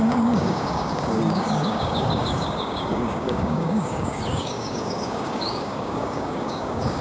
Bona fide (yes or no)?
no